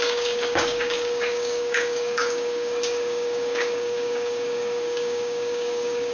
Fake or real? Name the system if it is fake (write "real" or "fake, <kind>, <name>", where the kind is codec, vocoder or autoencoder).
fake, codec, DAC